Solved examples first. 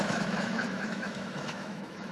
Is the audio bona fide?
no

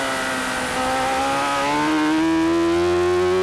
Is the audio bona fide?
yes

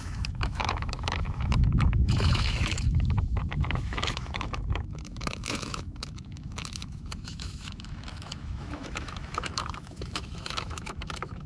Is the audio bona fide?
no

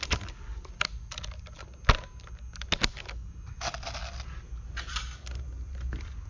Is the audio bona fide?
yes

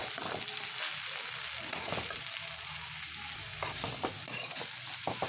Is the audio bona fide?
yes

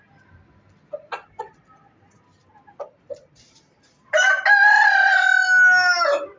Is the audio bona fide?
yes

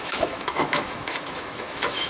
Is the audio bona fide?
no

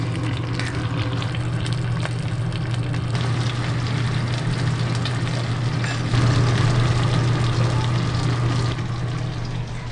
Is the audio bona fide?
yes